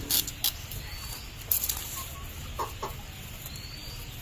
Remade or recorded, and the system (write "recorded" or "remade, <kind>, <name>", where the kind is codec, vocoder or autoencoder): recorded